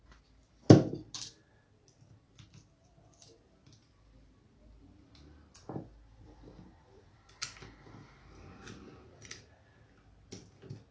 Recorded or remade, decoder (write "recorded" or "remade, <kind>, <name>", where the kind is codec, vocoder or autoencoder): recorded